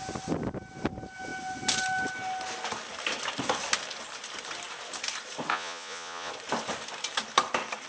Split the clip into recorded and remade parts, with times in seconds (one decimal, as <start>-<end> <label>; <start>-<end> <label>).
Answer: 0.0-5.5 recorded; 5.5-6.3 remade; 6.3-7.9 recorded

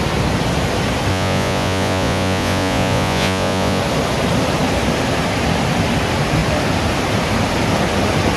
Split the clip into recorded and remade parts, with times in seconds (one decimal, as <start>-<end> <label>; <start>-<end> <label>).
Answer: 0.0-1.1 recorded; 1.1-3.8 remade; 3.8-8.4 recorded

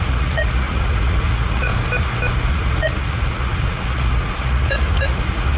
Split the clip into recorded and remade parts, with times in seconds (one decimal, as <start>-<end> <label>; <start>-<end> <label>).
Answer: 0.0-1.7 remade; 1.7-2.5 recorded; 2.5-5.6 remade